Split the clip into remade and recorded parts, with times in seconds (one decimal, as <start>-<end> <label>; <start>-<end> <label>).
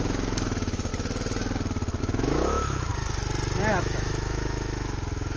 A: 0.0-0.9 remade; 0.9-2.0 recorded; 2.0-2.9 remade; 2.9-3.8 recorded; 3.8-5.4 remade